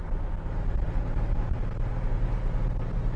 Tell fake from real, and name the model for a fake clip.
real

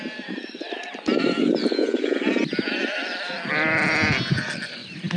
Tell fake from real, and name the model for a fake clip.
real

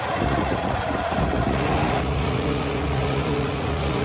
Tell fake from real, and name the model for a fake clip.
fake, vocoder, Vocos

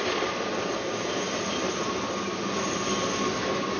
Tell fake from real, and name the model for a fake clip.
real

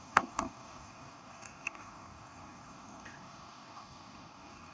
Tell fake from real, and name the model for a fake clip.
fake, codec, DAC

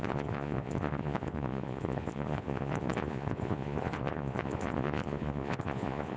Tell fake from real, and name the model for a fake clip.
fake, vocoder, Vocos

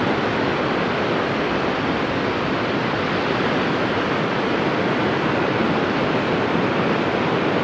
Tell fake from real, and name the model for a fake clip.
real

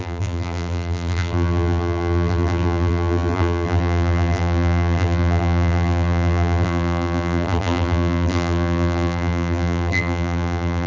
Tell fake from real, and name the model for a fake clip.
fake, vocoder, BigVGAN v2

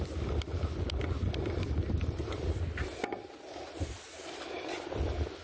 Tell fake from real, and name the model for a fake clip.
real